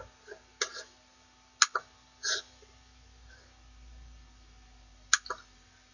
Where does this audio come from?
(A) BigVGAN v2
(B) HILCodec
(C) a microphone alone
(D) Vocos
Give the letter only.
C